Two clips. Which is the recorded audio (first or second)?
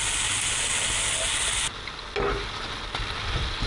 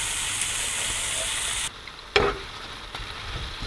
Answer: first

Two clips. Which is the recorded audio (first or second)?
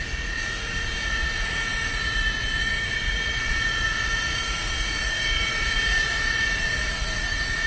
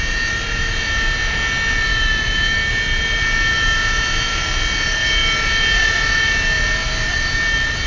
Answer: second